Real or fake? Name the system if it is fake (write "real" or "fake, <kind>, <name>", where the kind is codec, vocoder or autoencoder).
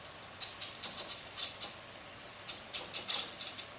real